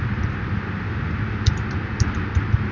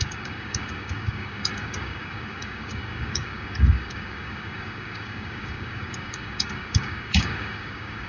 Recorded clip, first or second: first